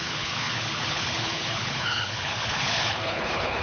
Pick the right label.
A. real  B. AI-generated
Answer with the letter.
B